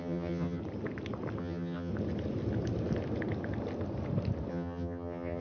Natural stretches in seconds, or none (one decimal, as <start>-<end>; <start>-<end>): 0.6-1.4; 1.9-4.5